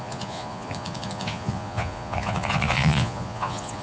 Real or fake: fake